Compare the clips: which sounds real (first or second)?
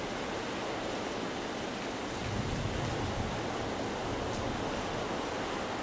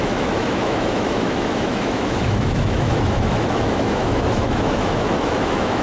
first